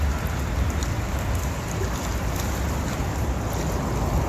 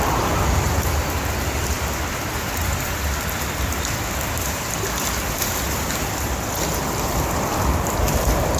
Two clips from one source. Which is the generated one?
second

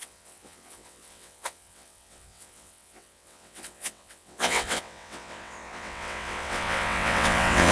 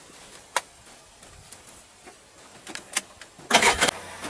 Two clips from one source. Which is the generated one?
first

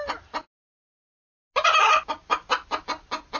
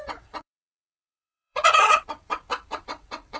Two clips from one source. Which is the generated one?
second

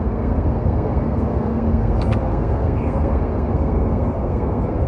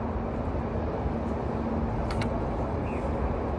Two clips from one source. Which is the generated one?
first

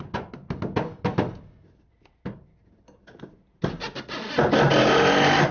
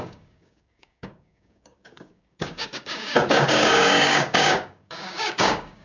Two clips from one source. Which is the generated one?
second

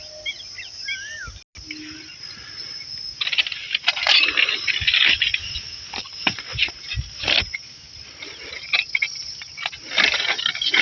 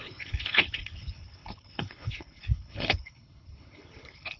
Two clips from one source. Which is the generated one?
second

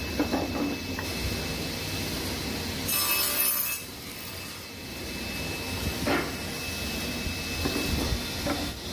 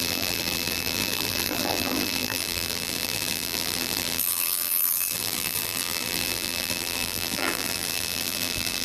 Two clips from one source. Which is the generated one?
second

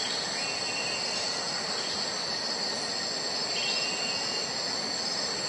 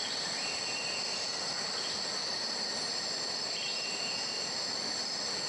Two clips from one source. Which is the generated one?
second